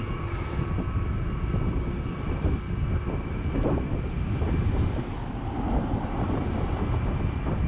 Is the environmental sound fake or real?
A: real